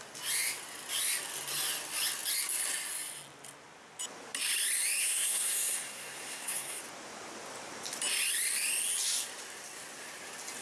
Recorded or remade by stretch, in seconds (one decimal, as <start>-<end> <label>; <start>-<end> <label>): 0.0-5.0 recorded; 5.0-6.8 remade; 6.8-10.6 recorded